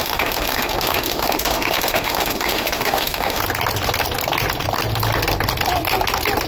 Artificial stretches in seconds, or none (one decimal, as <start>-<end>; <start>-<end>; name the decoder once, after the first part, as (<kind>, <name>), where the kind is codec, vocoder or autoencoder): 0.0-3.4 (autoencoder, DAC-VAE)